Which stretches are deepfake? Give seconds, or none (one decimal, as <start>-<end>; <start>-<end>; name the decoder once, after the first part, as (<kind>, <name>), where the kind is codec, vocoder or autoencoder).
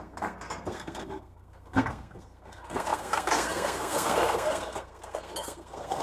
0.0-6.0 (codec, SNAC)